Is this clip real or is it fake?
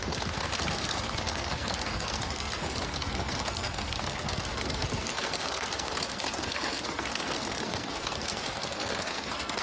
fake